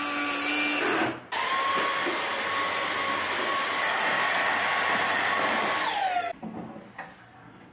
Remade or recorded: recorded